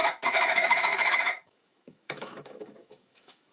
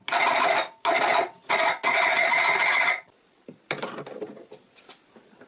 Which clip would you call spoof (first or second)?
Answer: first